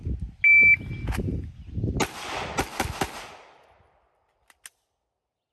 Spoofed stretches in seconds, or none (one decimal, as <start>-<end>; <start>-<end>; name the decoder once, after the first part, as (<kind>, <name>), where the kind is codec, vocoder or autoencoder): none